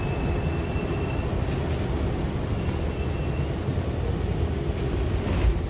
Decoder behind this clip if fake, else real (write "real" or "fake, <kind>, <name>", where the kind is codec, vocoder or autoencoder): real